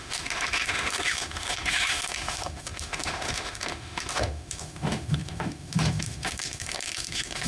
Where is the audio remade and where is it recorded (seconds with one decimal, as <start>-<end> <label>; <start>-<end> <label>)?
0.0-7.5 remade